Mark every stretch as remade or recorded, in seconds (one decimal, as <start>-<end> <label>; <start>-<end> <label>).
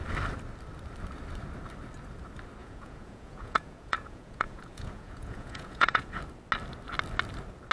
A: 0.0-2.6 recorded; 2.6-6.1 remade; 6.1-7.7 recorded